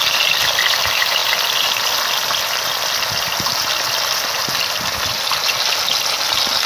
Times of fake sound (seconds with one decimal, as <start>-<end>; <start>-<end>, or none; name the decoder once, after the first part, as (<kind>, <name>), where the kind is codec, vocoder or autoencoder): none